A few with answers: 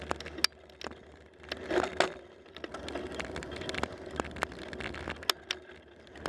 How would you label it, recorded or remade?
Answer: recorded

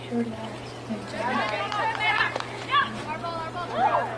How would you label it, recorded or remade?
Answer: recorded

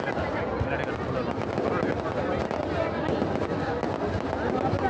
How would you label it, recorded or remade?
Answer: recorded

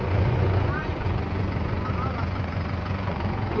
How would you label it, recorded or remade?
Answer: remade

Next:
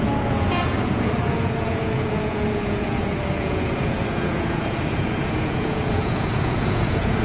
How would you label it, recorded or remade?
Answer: remade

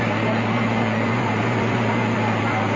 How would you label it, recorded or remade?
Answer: remade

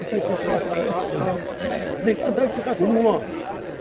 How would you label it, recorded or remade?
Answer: remade